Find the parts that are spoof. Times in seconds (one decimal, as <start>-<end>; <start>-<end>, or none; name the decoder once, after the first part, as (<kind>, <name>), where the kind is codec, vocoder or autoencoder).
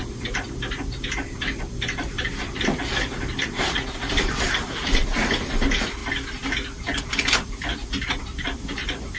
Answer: 0.0-6.0 (vocoder, BigVGAN v2); 7.0-9.2